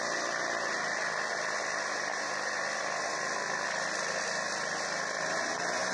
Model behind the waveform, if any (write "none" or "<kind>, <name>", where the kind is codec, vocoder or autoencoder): none